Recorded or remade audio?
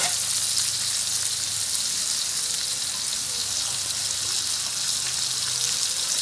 recorded